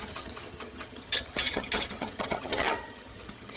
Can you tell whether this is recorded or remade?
remade